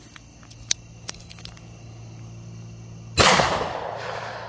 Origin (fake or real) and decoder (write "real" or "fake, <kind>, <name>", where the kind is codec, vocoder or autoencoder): real